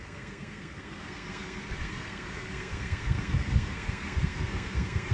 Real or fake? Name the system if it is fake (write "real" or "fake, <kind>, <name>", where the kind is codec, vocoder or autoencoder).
fake, codec, SNAC